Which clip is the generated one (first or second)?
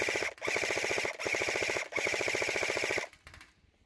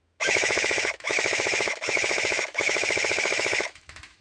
second